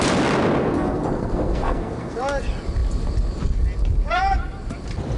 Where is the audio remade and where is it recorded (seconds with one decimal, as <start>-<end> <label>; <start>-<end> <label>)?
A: 0.0-0.6 recorded; 0.6-2.2 remade; 2.2-5.2 recorded